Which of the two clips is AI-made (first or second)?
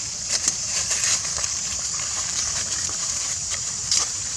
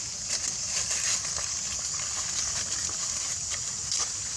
first